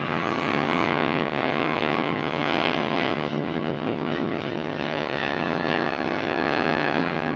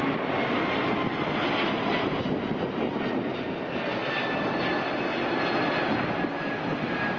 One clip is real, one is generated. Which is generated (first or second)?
first